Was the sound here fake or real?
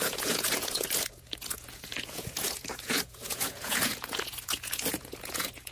fake